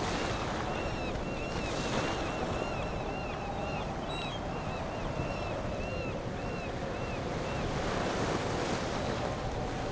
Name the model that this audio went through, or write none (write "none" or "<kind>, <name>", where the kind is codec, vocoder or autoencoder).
none